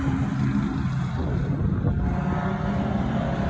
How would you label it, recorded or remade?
recorded